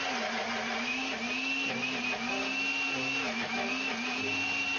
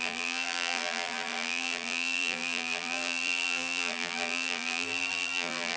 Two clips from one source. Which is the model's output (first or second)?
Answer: second